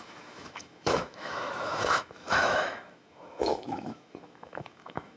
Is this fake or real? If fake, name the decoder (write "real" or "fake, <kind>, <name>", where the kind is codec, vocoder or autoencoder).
fake, autoencoder, DAC-VAE